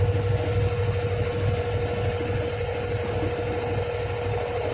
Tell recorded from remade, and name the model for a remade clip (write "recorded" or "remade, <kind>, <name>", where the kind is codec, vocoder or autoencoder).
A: recorded